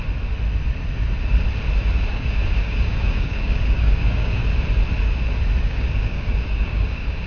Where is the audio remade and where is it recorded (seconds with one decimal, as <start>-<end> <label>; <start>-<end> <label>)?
0.0-2.1 recorded; 2.1-4.4 remade; 4.4-5.6 recorded; 5.6-7.3 remade